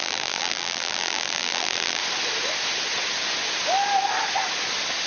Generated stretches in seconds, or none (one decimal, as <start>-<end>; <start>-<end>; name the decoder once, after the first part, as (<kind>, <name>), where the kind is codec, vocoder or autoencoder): 0.0-2.0 (vocoder, BigVGAN v2)